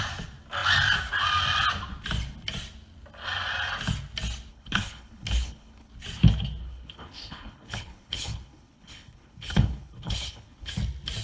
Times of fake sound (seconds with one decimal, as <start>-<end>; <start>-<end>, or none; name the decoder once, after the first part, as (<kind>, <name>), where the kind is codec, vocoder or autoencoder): 4.5-5.9 (codec, HILCodec); 6.6-10.7